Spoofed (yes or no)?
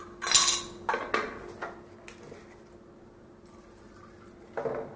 no